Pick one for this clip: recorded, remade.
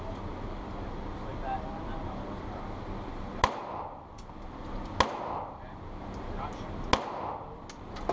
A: recorded